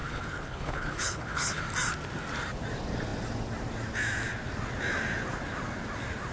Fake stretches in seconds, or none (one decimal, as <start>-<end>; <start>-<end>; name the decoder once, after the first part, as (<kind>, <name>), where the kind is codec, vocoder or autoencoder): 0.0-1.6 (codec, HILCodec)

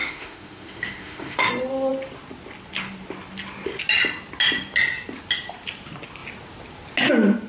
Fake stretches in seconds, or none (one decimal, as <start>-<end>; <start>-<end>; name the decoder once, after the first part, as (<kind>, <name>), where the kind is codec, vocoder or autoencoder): 0.0-1.5 (autoencoder, DAC-VAE)

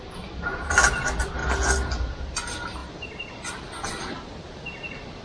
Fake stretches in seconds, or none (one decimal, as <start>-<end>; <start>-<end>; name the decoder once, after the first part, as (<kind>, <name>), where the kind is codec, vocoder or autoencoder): none

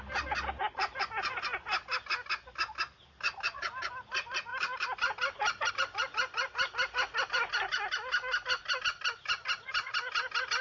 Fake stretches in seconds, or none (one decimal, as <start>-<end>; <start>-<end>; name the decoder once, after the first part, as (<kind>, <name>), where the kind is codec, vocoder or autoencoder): none

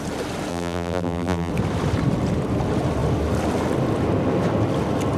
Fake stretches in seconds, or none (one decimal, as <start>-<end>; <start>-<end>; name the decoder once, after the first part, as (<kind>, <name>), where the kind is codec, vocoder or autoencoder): 0.5-1.5 (vocoder, BigVGAN v2)